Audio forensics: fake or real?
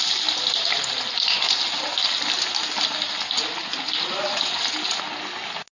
real